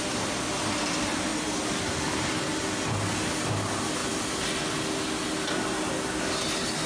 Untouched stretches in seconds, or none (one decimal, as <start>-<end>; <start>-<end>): 0.0-6.9